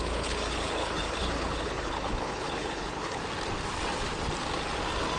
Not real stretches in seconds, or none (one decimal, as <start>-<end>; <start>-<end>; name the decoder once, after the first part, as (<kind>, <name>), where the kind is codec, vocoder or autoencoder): 0.0-3.2 (codec, HILCodec)